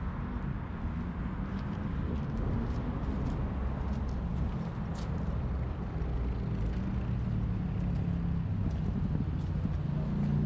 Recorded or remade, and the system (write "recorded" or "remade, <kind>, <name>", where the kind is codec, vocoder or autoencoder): recorded